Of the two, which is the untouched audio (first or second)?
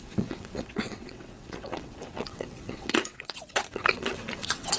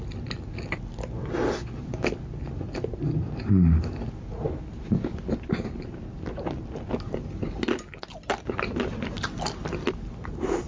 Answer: second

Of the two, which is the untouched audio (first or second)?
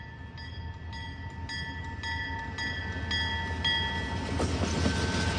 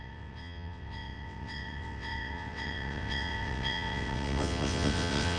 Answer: first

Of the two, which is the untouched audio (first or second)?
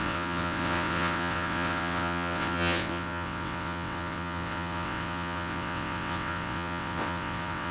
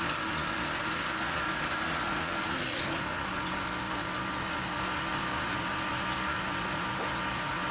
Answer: second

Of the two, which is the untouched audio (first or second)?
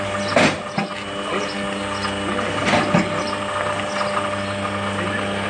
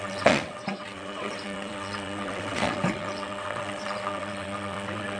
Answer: first